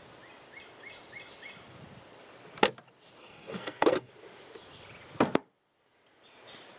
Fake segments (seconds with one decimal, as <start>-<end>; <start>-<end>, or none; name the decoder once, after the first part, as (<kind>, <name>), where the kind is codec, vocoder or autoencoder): 3.2-4.1 (codec, SNAC)